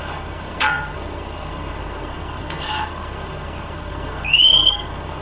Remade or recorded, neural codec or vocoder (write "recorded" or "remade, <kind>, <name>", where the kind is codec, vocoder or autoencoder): remade, codec, SNAC